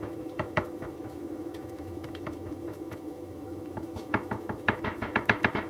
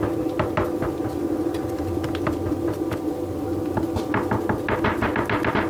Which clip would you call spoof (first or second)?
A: first